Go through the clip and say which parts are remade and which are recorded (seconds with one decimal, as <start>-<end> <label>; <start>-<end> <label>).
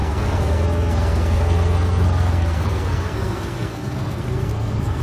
0.0-5.0 remade